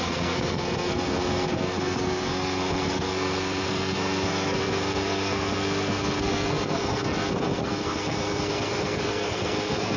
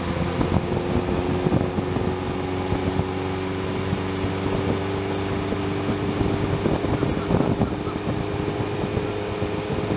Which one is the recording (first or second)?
second